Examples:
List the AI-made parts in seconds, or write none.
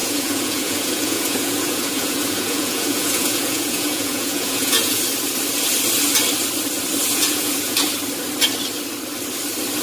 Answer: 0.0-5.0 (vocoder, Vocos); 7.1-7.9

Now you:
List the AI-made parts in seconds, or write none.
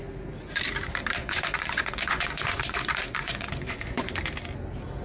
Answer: 1.2-4.2 (vocoder, Vocos)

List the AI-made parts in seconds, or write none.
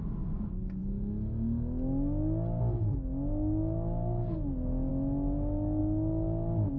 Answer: none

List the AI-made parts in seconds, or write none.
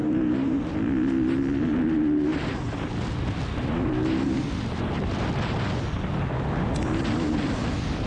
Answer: 0.0-0.6 (vocoder, BigVGAN v2)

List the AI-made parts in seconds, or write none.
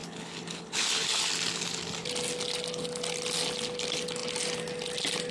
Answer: 0.0-1.3 (codec, HILCodec)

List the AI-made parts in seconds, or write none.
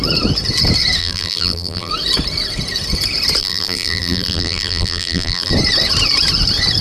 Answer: 1.0-1.9 (vocoder, BigVGAN v2); 3.4-5.5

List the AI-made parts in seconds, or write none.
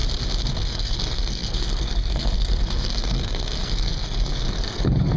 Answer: 0.5-5.2 (codec, SNAC)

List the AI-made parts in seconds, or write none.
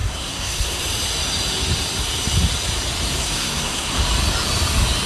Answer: 0.0-0.8 (codec, SNAC); 3.2-4.0